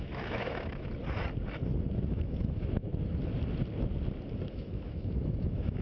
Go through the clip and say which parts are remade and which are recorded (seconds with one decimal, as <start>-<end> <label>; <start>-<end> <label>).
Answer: 0.0-0.9 remade; 0.9-2.1 recorded; 2.1-2.9 remade; 2.9-4.5 recorded; 4.5-5.8 remade